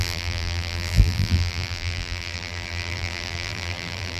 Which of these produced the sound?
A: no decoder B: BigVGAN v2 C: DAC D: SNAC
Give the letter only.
B